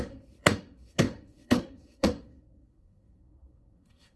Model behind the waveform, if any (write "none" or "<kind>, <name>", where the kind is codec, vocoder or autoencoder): codec, SNAC